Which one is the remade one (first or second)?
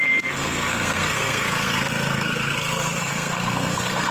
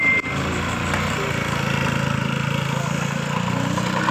first